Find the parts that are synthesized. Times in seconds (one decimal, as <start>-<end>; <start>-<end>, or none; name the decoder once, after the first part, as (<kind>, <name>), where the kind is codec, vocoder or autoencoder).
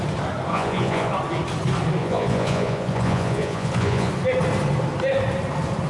0.5-1.1 (vocoder, Vocos); 2.0-4.1